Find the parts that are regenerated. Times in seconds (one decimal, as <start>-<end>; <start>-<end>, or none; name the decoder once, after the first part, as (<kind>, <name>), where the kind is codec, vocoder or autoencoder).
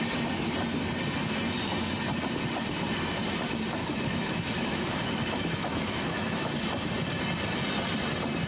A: 3.8-6.5 (autoencoder, DAC-VAE)